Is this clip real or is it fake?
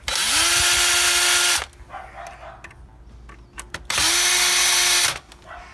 real